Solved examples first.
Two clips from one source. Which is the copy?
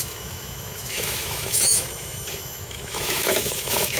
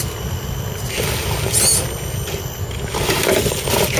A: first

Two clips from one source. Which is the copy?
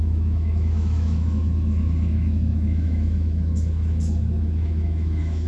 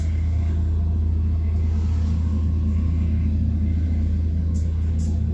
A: first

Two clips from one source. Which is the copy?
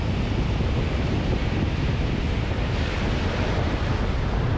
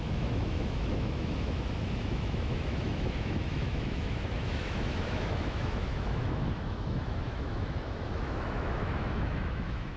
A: second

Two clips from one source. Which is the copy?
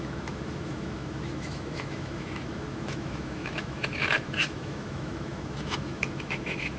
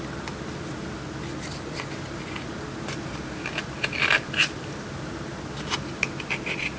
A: first